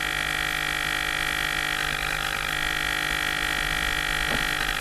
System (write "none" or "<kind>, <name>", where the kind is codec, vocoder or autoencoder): none